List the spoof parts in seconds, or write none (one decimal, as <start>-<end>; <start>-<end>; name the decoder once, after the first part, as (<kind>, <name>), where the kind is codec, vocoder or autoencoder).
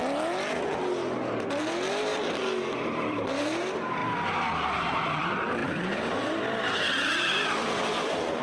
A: 1.9-4.0 (vocoder, BigVGAN v2); 4.8-8.4